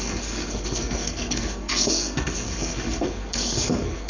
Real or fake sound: fake